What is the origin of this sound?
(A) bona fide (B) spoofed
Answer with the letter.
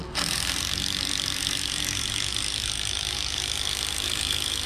B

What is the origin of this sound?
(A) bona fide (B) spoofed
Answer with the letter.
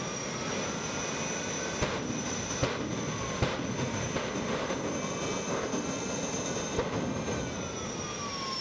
A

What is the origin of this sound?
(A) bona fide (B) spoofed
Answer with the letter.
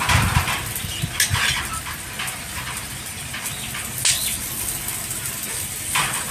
A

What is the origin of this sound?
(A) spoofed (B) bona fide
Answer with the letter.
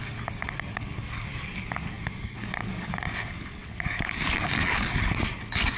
A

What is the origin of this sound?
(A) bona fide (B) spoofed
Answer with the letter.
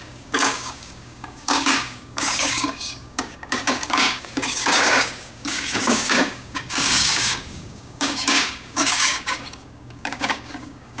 B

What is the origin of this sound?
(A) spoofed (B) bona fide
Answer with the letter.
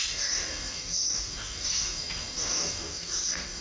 A